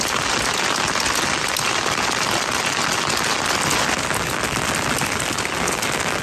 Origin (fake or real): real